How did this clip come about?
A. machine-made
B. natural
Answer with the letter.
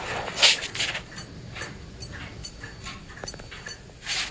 B